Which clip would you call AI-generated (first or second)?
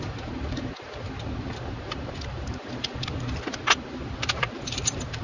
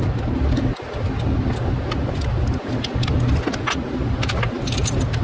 first